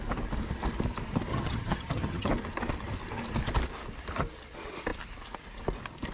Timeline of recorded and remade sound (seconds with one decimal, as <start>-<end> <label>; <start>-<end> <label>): 0.0-1.3 recorded; 1.3-2.3 remade; 2.3-6.1 recorded